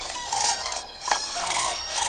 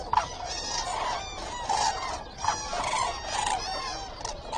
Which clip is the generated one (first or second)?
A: first